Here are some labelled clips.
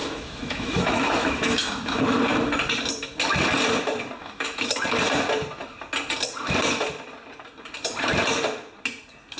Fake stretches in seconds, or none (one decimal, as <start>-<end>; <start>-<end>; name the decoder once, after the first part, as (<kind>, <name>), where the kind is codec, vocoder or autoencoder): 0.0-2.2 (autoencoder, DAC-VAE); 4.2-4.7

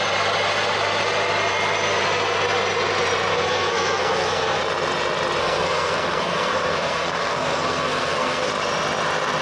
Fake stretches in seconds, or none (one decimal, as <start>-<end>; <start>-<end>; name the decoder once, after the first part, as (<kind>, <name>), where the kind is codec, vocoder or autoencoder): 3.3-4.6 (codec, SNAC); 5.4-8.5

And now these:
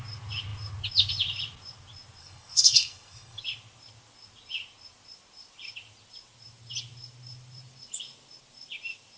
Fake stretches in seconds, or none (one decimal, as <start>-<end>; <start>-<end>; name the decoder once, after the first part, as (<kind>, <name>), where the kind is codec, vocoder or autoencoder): 2.2-3.4 (codec, SNAC)

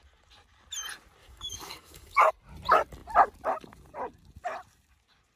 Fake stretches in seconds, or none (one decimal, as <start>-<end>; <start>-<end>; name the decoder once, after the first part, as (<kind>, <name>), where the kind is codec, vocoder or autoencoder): 1.2-2.3 (codec, DAC)

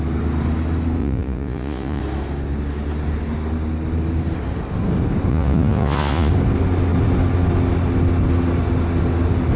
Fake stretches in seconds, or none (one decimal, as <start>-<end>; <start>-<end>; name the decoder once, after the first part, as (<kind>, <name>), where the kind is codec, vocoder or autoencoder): 1.0-2.0 (vocoder, Vocos); 5.3-6.3